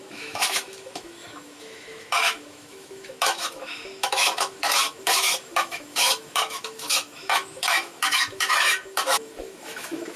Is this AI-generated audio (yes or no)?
yes